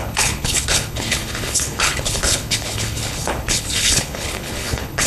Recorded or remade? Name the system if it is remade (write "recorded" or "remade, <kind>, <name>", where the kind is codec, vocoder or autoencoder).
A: remade, codec, HILCodec